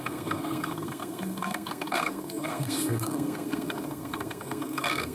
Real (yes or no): no